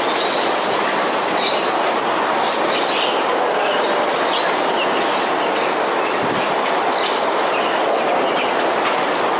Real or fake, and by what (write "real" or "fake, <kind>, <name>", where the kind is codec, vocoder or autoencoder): real